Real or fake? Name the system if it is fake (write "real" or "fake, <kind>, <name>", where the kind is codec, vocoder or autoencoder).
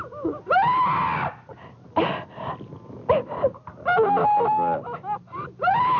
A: real